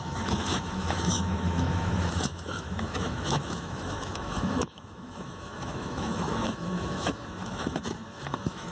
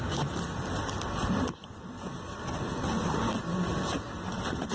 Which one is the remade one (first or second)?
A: first